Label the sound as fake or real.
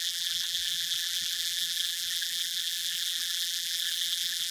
fake